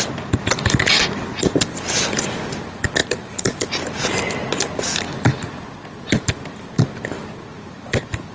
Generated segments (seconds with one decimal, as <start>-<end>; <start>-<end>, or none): 3.0-3.8; 7.5-8.3